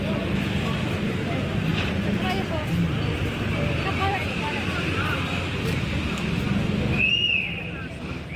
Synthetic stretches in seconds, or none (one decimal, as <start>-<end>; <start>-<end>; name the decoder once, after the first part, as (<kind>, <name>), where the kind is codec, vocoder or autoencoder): none